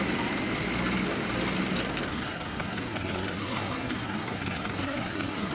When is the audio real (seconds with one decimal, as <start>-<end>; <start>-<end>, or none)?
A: 0.0-2.1